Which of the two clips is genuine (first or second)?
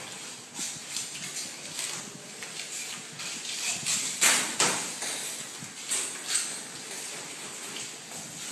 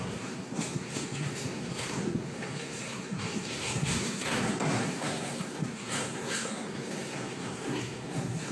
first